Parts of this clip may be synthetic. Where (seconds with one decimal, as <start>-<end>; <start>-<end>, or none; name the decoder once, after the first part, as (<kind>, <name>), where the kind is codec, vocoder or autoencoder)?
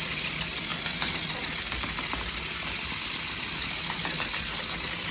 none